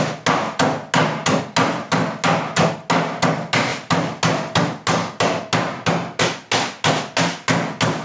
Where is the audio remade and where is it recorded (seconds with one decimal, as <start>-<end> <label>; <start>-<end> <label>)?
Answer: 0.0-8.0 recorded